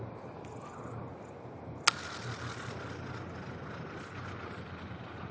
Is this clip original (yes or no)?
yes